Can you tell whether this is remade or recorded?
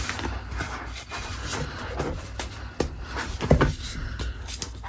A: recorded